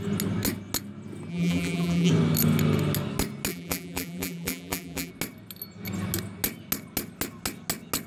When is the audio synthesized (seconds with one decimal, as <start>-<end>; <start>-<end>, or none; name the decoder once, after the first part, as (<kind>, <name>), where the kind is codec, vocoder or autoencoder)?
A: 1.3-2.1 (vocoder, BigVGAN v2); 3.5-5.1